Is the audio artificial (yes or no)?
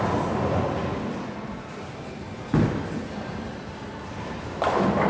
no